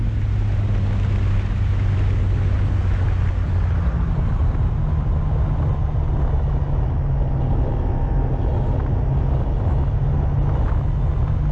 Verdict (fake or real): real